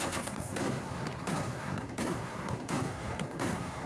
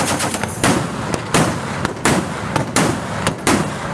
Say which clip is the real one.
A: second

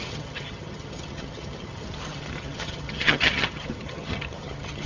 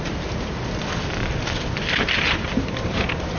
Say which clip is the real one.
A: second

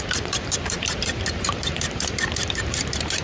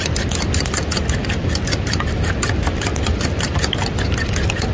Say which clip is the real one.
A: second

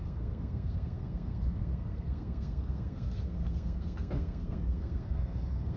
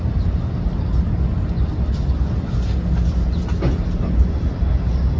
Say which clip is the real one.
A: second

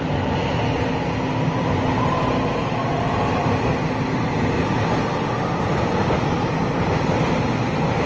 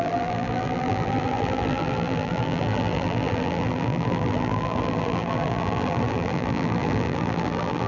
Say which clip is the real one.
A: first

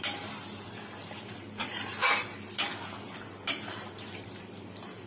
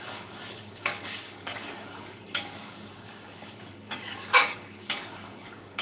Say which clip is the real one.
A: first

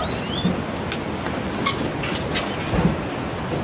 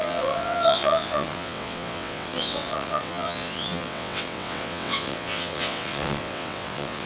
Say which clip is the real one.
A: first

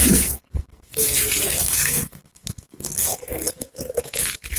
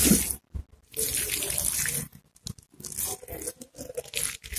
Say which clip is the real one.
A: second